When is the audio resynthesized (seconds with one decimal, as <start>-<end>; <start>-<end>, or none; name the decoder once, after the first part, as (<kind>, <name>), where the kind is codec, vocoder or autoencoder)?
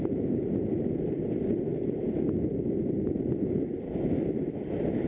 0.0-1.7 (vocoder, BigVGAN v2)